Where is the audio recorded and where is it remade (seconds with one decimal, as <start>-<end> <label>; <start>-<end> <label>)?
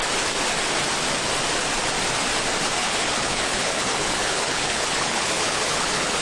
0.0-2.8 recorded; 2.8-6.2 remade